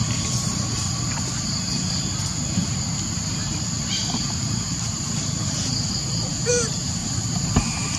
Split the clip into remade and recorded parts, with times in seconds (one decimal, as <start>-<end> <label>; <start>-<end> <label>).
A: 0.0-3.5 recorded; 3.5-6.5 remade; 6.5-7.0 recorded; 7.0-7.5 remade; 7.5-8.0 recorded

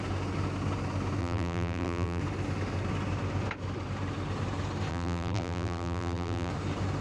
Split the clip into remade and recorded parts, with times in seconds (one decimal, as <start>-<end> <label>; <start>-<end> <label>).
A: 0.0-1.2 recorded; 1.2-2.2 remade; 2.2-4.9 recorded; 4.9-6.5 remade; 6.5-7.0 recorded

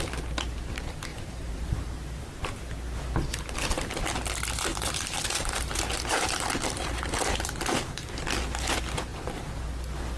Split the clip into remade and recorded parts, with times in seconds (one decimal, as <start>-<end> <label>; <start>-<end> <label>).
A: 0.0-1.1 recorded; 1.1-2.4 remade; 2.4-4.7 recorded; 4.7-8.1 remade; 8.1-10.2 recorded

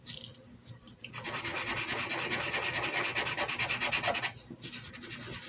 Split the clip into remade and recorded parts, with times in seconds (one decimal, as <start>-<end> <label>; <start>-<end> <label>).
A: 0.0-5.5 recorded